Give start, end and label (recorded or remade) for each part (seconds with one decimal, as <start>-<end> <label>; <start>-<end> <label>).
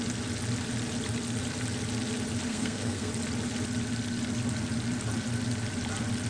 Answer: 0.0-2.5 recorded; 2.5-3.1 remade; 3.1-6.3 recorded